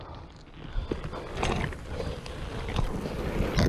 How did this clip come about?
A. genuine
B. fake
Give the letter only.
A